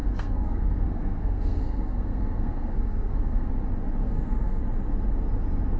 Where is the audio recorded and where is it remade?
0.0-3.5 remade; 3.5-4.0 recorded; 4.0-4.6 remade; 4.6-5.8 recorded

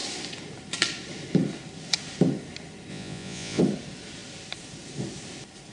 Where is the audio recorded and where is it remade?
0.0-2.9 recorded; 2.9-3.6 remade; 3.6-5.7 recorded

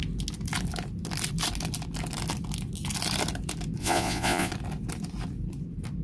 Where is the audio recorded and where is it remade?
0.0-3.8 recorded; 3.8-4.5 remade; 4.5-6.0 recorded